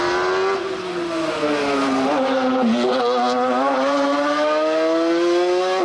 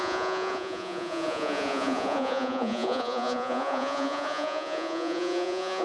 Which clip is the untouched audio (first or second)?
first